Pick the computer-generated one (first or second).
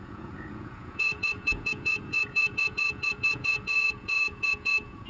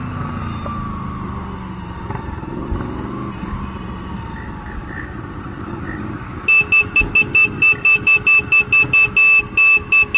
first